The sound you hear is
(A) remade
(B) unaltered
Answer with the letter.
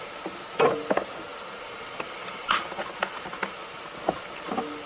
B